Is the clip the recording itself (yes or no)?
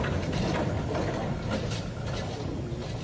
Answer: yes